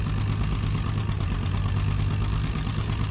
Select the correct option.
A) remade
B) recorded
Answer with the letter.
B